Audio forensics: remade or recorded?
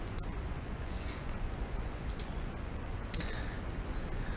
remade